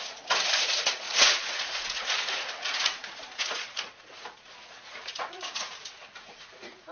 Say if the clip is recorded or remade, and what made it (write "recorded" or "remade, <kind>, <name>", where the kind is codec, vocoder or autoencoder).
remade, vocoder, Vocos